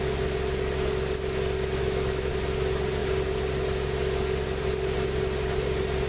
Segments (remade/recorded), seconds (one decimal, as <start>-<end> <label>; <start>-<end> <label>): 0.0-1.8 recorded; 1.8-2.3 remade; 2.3-6.1 recorded